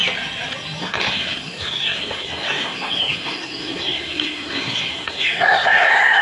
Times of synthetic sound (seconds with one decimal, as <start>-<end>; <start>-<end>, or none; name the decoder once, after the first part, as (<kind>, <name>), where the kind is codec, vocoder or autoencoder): 0.8-6.2 (codec, SNAC)